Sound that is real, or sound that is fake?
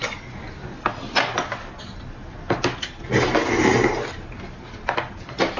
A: real